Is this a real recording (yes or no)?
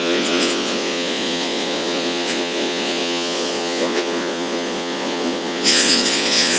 no